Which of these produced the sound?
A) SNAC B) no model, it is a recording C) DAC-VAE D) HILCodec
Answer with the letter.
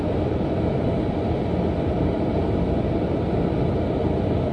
B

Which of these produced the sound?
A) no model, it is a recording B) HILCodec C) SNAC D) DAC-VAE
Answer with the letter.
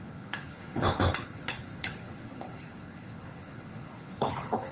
B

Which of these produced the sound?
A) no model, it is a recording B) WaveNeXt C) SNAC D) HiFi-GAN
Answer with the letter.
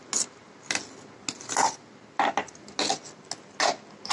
A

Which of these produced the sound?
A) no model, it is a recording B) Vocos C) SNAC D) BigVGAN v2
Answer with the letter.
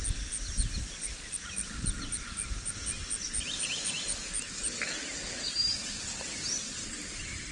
A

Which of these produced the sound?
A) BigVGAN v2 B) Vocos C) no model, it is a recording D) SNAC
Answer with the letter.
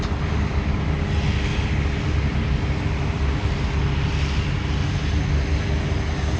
C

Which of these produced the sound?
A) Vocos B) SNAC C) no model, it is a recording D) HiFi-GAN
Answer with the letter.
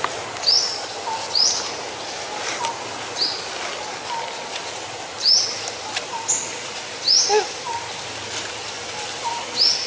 C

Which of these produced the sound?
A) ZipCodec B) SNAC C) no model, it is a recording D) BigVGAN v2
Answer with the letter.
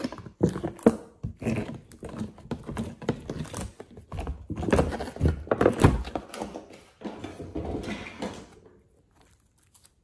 C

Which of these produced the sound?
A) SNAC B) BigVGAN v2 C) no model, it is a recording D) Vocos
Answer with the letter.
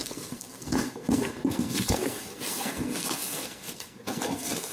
A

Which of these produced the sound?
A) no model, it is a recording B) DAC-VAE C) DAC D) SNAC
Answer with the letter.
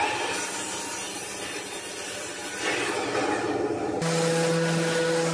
A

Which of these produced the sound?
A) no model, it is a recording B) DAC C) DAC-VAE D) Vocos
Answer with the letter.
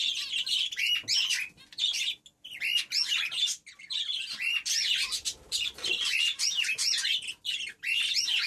A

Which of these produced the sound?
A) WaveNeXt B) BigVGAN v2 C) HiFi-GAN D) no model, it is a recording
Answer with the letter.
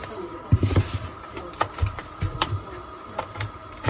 B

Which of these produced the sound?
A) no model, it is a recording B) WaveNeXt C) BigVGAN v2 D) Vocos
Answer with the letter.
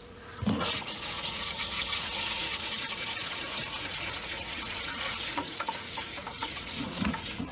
D